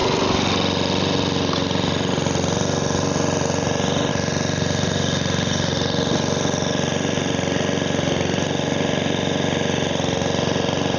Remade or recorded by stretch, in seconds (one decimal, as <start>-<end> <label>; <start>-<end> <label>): 0.0-11.0 recorded